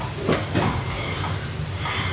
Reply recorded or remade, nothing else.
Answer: recorded